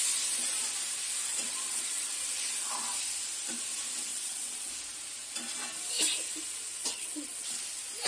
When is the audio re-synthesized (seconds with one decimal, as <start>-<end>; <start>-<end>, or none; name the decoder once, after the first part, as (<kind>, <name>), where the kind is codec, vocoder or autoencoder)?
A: 1.3-2.1 (vocoder, WaveNeXt); 4.1-4.7; 6.8-7.6